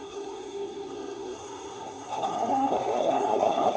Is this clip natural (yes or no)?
no